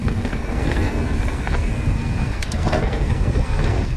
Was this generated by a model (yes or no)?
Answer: yes